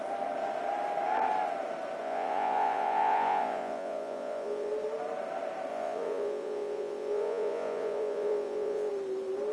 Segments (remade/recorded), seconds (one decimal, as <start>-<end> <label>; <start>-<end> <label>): 0.0-2.0 recorded; 2.0-4.7 remade; 4.7-5.7 recorded; 5.7-8.9 remade; 8.9-9.5 recorded